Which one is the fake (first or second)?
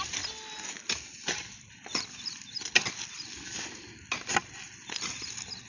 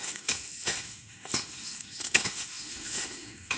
second